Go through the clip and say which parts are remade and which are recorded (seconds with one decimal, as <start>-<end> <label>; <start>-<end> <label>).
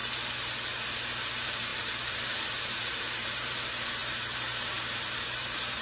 0.0-0.8 recorded; 0.8-5.8 remade